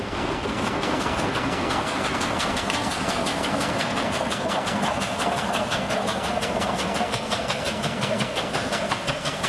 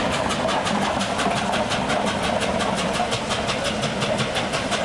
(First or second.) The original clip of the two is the second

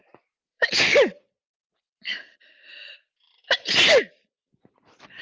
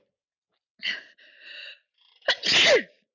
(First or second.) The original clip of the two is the second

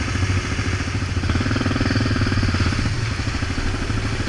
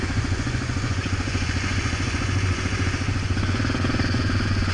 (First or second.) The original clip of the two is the first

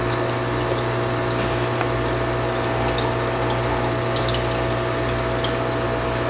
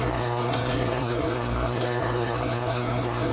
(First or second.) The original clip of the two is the first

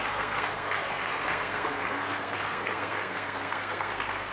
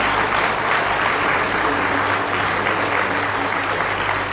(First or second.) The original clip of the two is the second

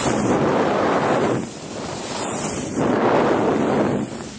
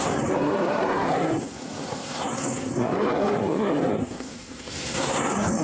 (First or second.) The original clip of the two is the first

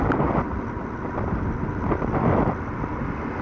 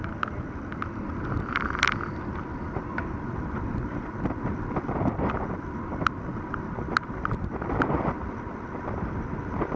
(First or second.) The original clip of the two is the first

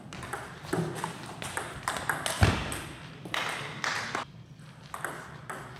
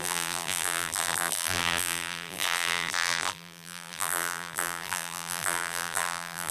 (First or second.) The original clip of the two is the first